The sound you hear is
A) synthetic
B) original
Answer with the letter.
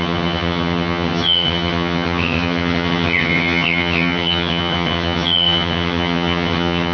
A